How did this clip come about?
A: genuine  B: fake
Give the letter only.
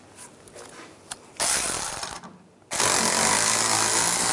A